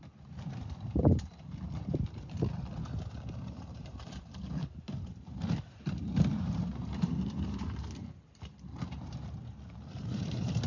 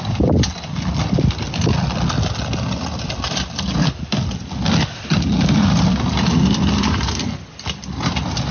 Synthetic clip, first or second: first